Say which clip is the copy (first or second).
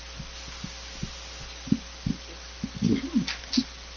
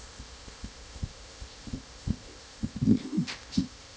second